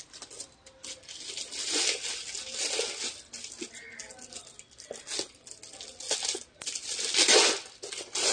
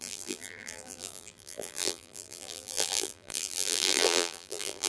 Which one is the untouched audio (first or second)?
first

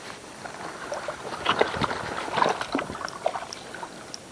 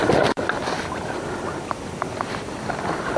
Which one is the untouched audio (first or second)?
first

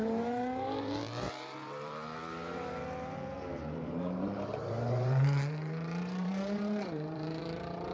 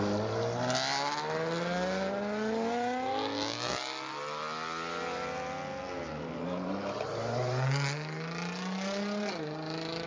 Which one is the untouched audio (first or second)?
second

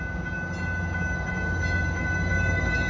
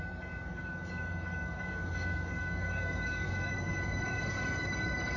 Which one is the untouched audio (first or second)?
first